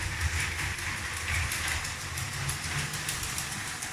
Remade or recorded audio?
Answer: recorded